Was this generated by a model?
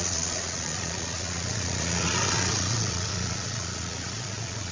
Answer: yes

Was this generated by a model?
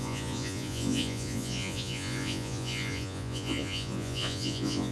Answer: yes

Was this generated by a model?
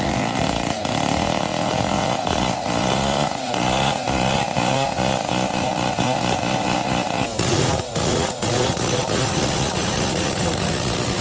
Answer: yes